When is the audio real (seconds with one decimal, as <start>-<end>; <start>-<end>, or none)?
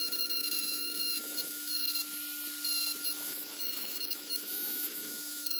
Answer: 1.9-3.0